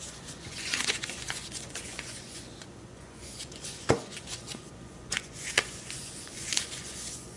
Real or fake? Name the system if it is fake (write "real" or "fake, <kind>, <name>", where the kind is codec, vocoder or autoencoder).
fake, vocoder, Vocos